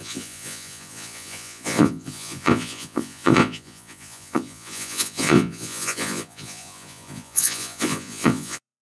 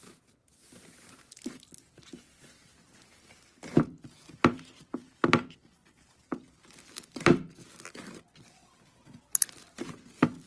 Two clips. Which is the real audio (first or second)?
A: second